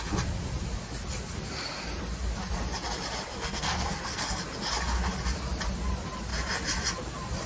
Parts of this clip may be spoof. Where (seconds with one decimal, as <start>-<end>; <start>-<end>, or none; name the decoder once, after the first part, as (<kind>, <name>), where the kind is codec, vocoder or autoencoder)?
3.3-4.4 (codec, SNAC)